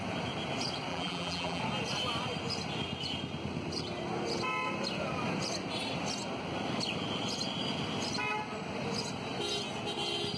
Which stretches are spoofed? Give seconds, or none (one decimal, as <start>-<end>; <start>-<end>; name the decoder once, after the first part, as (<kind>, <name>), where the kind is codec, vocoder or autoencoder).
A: 0.9-1.6 (vocoder, BigVGAN v2)